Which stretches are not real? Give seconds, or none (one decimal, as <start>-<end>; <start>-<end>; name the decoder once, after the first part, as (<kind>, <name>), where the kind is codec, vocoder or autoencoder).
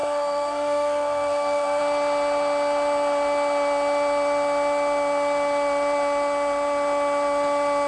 0.0-1.8 (codec, SNAC)